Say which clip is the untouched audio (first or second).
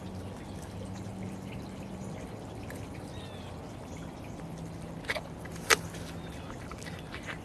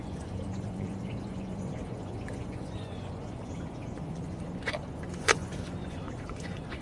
first